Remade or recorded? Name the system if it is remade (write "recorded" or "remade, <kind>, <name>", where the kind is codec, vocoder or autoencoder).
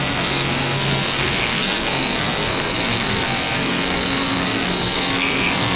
remade, codec, SNAC